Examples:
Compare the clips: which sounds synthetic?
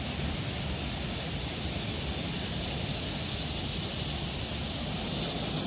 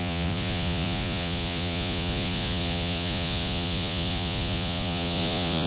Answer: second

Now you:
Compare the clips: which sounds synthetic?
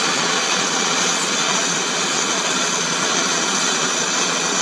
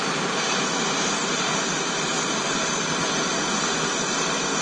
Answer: first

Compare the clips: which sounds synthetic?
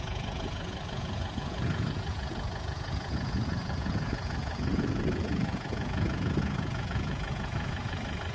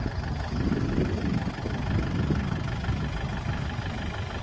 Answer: first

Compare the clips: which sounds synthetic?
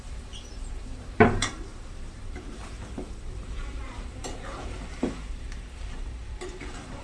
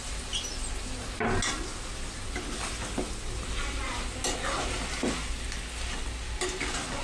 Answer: first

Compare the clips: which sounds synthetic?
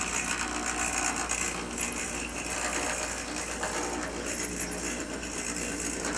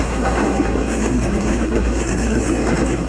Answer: second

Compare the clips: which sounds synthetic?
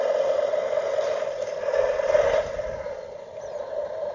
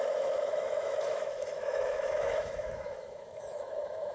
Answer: second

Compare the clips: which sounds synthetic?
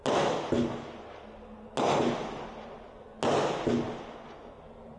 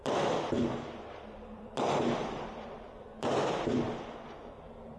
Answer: second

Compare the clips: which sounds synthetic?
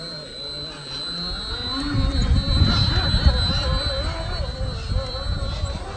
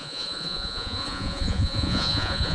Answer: second